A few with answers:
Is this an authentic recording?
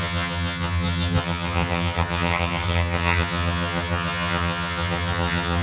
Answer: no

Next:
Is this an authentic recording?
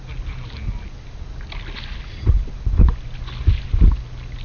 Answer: yes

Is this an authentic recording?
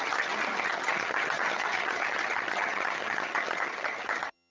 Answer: no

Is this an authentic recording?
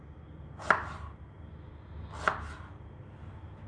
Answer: yes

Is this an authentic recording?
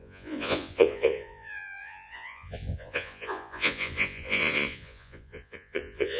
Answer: no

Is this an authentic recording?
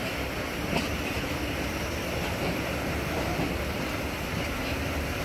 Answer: yes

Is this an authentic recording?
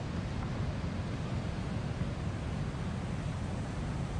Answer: yes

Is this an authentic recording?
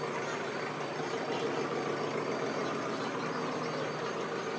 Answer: yes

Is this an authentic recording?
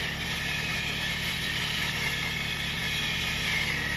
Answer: yes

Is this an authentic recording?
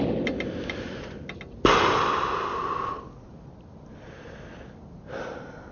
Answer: yes